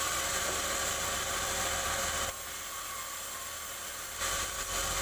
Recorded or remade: recorded